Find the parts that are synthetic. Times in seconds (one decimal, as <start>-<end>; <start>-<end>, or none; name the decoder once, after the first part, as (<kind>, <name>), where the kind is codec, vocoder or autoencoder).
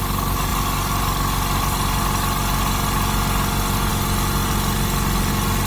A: none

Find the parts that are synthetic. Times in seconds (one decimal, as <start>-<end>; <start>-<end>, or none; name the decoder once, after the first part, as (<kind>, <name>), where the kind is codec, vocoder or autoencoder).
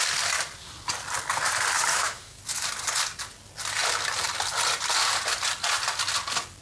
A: 1.9-2.4 (autoencoder, DAC-VAE)